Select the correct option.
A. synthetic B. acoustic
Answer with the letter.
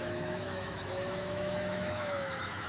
A